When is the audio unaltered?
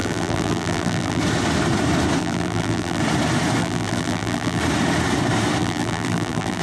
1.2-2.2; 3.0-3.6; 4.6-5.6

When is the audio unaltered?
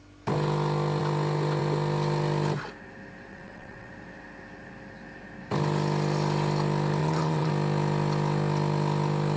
0.0-3.3; 3.9-7.0; 7.5-9.4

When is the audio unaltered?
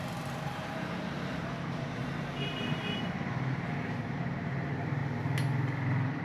5.0-6.2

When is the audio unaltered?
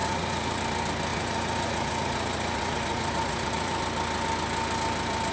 0.6-1.1; 3.8-5.3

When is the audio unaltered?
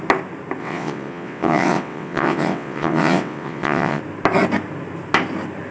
0.0-0.6; 4.0-5.7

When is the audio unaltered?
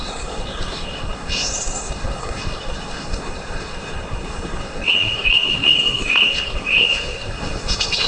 none